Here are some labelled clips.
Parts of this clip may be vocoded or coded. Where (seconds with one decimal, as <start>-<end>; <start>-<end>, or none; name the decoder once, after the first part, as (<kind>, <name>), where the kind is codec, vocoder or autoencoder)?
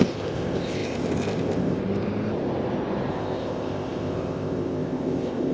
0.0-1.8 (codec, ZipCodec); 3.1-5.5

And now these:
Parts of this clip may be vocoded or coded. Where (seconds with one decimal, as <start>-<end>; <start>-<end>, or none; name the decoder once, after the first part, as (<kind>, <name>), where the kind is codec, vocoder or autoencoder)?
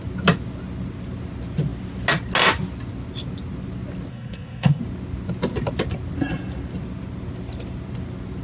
4.1-4.8 (codec, SNAC)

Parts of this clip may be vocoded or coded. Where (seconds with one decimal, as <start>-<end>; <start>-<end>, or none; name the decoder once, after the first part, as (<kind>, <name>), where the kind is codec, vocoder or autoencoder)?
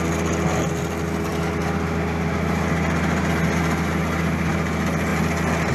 none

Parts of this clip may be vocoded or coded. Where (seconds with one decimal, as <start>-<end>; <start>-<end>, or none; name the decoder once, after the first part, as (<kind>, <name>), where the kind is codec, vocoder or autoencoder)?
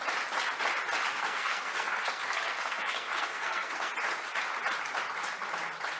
1.1-3.9 (codec, SNAC)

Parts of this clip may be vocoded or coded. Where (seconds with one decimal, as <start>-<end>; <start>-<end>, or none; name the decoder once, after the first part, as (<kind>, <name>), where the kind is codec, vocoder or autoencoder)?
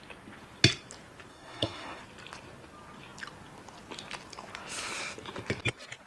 1.3-2.0 (codec, SNAC)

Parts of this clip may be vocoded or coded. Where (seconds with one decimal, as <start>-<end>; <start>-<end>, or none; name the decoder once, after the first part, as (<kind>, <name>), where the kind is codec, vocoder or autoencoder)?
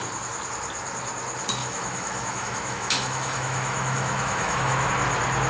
1.6-4.9 (autoencoder, DAC-VAE)